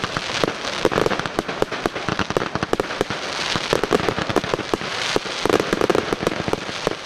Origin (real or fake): real